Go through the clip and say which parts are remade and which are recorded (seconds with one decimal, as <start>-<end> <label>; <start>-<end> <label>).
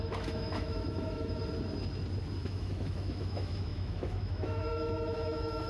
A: 0.0-1.4 remade; 1.4-2.4 recorded; 2.4-5.7 remade